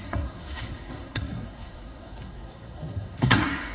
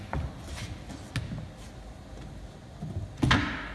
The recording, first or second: second